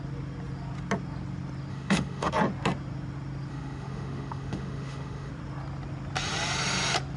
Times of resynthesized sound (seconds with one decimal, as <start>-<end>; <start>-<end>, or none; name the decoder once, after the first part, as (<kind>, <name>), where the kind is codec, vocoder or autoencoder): 1.7-2.3 (autoencoder, DAC-VAE); 3.5-5.3